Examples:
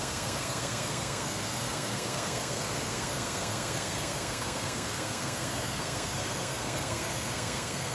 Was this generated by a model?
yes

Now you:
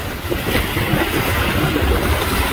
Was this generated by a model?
no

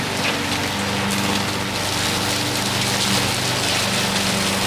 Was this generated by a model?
no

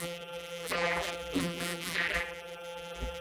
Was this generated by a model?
yes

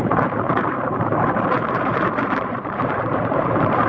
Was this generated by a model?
yes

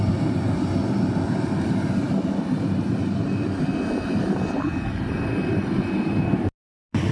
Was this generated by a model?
no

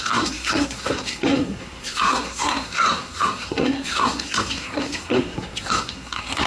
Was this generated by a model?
yes